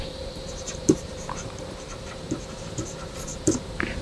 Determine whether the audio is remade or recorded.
remade